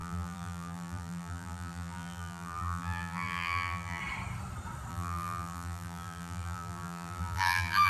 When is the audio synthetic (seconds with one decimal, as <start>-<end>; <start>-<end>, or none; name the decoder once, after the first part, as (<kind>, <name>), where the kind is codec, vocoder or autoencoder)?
0.0-4.0 (vocoder, BigVGAN v2); 4.9-7.9